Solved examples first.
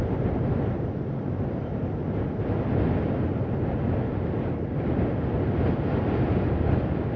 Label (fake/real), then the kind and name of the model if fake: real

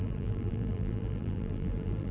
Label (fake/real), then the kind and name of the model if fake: fake, vocoder, BigVGAN v2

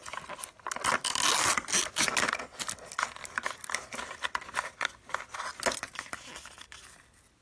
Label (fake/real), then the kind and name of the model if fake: real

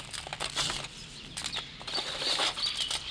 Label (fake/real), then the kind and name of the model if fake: real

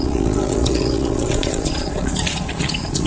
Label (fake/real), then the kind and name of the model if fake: fake, vocoder, Vocos